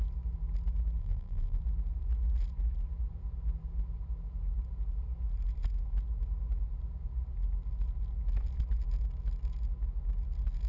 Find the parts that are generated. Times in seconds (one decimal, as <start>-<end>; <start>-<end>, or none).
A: 1.0-1.6